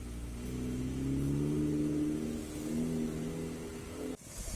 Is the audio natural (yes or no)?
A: yes